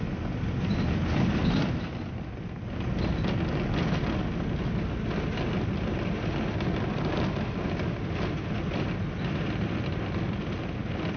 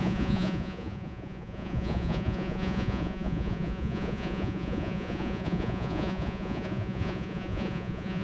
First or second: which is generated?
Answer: second